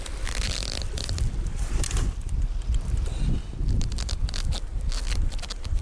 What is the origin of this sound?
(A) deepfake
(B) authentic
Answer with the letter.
B